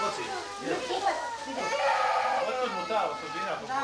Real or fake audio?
real